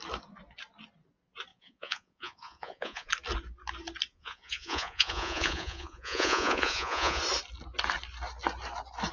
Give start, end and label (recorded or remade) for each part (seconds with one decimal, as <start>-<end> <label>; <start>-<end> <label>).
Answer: 0.0-1.5 recorded; 1.5-3.1 remade; 3.1-4.1 recorded; 4.1-7.2 remade; 7.2-9.1 recorded